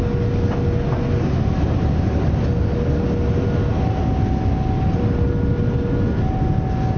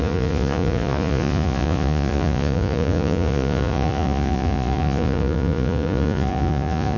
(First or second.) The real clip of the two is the first